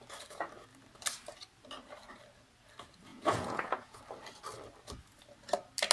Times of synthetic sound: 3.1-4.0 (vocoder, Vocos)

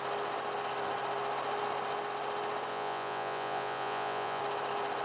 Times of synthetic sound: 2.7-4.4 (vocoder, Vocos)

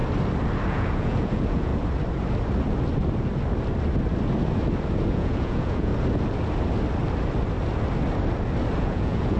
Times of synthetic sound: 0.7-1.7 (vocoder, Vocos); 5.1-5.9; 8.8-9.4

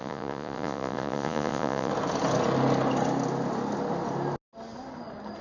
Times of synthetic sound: 0.0-1.9 (vocoder, Vocos)

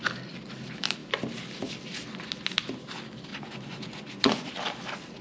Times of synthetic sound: 3.3-4.5 (vocoder, Vocos)